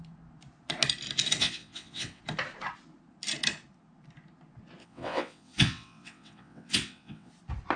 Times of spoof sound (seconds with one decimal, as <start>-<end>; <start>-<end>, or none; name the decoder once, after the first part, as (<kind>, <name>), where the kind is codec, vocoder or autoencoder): 1.4-2.2 (vocoder, WaveNeXt); 4.8-7.3